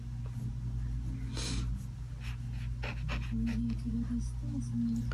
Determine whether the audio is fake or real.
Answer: real